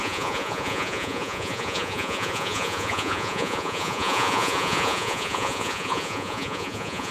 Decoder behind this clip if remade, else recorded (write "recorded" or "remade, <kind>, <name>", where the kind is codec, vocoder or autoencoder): remade, vocoder, Vocos